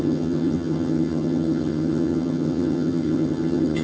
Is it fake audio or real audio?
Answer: fake